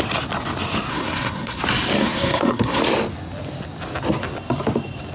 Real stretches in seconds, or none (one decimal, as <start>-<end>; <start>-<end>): 0.0-0.9; 1.6-2.0; 2.8-5.1